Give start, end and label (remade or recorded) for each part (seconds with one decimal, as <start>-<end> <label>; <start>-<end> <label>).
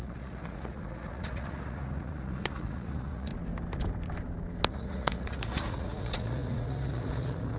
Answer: 0.0-3.3 remade; 3.3-4.7 recorded; 4.7-7.6 remade